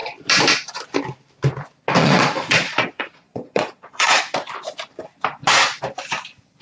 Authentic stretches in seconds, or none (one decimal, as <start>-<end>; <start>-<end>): 0.0-2.0; 4.2-6.6